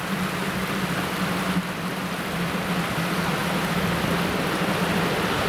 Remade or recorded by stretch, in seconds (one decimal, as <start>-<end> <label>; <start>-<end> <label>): 0.0-5.5 recorded